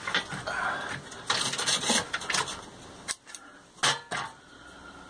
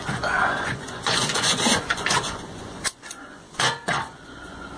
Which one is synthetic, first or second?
second